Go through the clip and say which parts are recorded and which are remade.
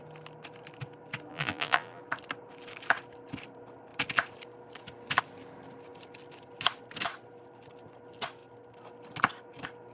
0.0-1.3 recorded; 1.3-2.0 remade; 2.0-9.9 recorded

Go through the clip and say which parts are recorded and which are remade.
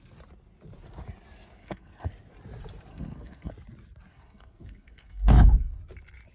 0.0-1.6 recorded; 1.6-2.1 remade; 2.1-2.9 recorded; 2.9-3.5 remade; 3.5-4.1 recorded; 4.1-5.8 remade; 5.8-6.3 recorded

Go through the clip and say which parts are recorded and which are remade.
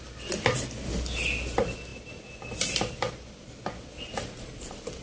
0.0-5.0 recorded